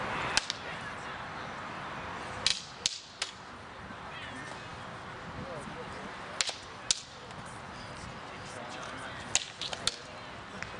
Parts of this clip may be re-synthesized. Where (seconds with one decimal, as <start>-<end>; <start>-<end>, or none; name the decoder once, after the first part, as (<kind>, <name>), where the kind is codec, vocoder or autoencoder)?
none